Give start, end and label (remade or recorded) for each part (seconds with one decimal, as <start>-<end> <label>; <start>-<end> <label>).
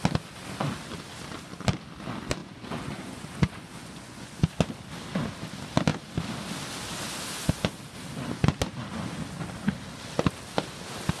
0.0-2.4 recorded; 2.4-4.5 remade; 4.5-11.2 recorded